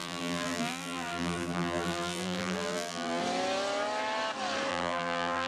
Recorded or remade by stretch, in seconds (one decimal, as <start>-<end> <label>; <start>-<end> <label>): 0.0-3.2 remade; 3.2-4.7 recorded; 4.7-5.5 remade